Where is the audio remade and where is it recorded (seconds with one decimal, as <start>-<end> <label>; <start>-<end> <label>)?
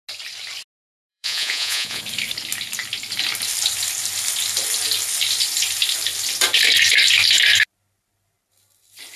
0.0-1.1 recorded; 1.1-2.0 remade; 2.0-9.2 recorded